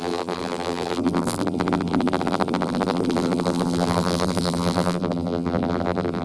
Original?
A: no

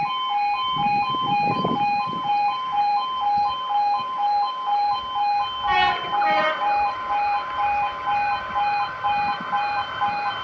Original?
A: no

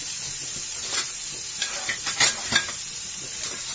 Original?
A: yes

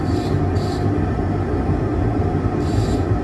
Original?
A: no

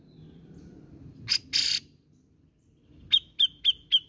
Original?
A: yes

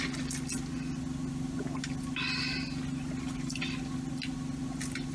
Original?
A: yes